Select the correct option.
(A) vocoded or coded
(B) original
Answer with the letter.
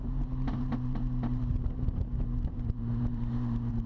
A